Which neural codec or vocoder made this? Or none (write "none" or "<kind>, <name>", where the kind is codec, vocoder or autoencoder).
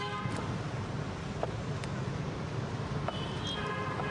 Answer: none